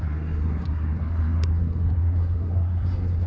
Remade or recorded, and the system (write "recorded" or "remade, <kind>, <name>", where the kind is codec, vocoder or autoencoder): remade, codec, SNAC